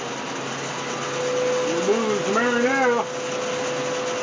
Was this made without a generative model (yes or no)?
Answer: yes